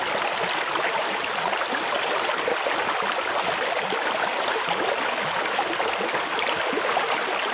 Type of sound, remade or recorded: recorded